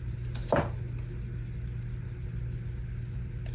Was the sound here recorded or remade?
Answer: recorded